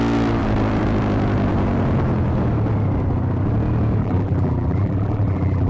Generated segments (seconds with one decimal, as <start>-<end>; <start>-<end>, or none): 4.0-5.7